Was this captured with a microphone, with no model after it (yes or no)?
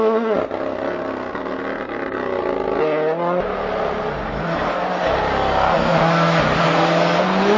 yes